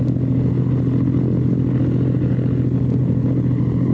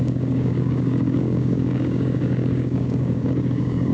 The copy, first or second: second